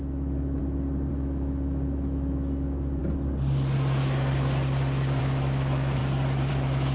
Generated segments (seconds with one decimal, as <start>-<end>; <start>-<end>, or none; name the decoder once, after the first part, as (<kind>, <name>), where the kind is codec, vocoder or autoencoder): 0.0-0.6 (autoencoder, DAC-VAE); 1.1-3.0; 5.2-6.0; 6.5-6.9